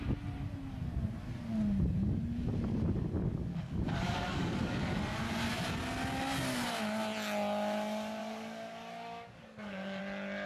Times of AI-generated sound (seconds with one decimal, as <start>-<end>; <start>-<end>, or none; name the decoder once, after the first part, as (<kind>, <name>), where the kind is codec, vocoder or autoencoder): 3.3-5.0 (codec, DAC); 8.2-10.0